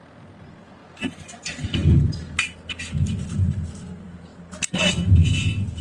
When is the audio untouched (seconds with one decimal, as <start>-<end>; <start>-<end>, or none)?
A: 0.0-0.8; 1.4-5.8